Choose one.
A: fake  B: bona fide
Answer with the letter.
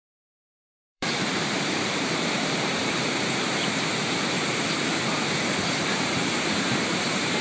A